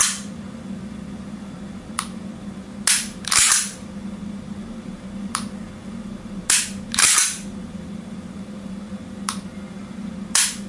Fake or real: real